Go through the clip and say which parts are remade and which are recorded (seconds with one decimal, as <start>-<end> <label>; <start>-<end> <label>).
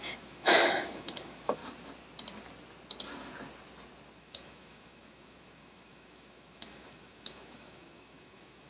0.0-1.6 remade; 1.6-4.2 recorded; 4.2-8.7 remade